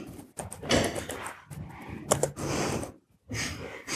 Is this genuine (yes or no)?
yes